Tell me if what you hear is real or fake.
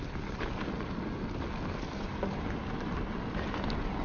real